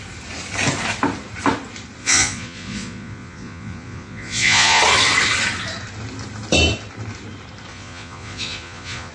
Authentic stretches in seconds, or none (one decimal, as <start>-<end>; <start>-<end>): 0.0-2.0; 4.8-7.7